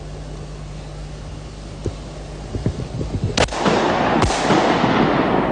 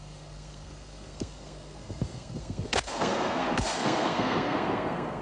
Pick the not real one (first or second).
second